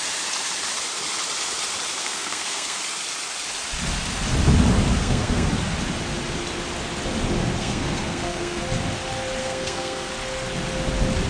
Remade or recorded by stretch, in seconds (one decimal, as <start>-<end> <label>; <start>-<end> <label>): 0.0-2.0 recorded; 2.0-2.8 remade; 2.8-5.0 recorded; 5.0-5.5 remade; 5.5-7.6 recorded; 7.6-8.6 remade; 8.6-9.4 recorded; 9.4-10.1 remade; 10.1-11.3 recorded